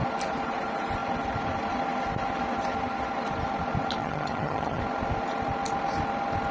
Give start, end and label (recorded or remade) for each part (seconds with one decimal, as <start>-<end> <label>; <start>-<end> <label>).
0.0-4.0 recorded; 4.0-4.8 remade; 4.8-6.5 recorded